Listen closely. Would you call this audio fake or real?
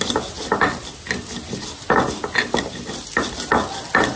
real